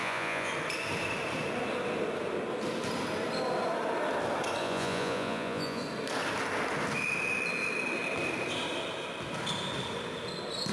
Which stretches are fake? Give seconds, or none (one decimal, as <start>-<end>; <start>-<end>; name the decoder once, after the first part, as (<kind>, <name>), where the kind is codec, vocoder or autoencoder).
0.0-0.5 (vocoder, Vocos); 4.6-5.8